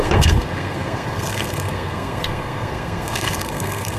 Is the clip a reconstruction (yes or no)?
yes